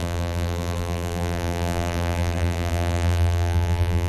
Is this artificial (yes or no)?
yes